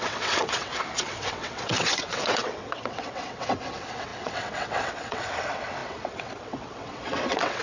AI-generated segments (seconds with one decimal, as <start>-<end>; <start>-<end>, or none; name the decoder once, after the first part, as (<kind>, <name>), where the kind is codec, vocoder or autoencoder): 0.0-7.6 (vocoder, WaveNeXt)